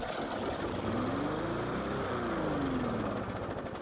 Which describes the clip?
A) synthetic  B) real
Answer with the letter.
B